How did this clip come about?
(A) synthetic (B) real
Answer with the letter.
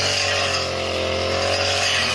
B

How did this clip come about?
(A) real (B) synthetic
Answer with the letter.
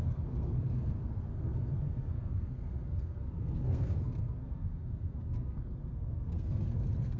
B